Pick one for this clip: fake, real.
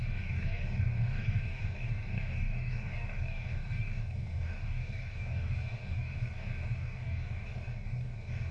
fake